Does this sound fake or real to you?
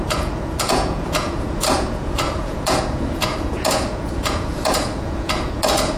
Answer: fake